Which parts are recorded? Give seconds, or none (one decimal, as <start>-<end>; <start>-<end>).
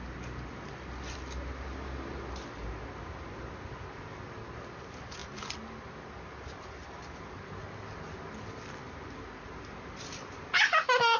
0.0-11.2